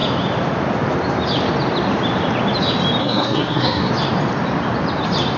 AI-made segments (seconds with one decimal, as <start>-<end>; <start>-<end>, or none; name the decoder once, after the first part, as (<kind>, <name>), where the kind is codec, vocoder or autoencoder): 3.0-3.9 (codec, SNAC)